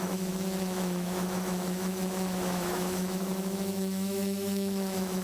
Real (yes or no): no